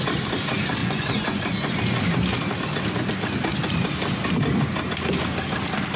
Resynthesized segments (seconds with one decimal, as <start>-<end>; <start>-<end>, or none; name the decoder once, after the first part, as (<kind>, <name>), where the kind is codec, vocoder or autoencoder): 0.8-1.8 (vocoder, Vocos)